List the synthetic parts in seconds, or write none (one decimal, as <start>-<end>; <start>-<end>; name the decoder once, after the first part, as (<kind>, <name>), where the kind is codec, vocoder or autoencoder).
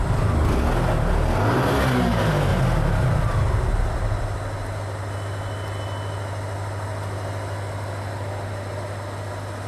none